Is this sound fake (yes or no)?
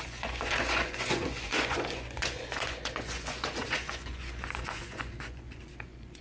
yes